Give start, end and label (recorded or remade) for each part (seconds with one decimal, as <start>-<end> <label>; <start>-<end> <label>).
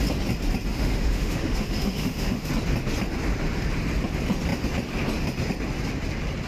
0.0-0.7 recorded; 0.7-2.5 remade; 2.5-6.5 recorded